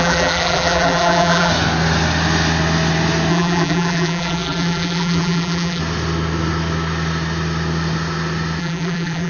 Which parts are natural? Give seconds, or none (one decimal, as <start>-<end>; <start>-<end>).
1.5-3.3; 5.8-8.6